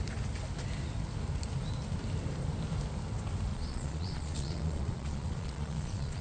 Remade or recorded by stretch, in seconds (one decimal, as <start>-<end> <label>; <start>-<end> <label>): 0.0-3.5 recorded; 3.5-6.2 remade